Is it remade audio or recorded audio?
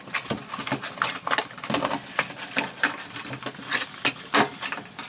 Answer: recorded